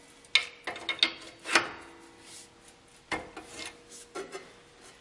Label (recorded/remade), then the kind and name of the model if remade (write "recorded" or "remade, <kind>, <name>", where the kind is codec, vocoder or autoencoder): recorded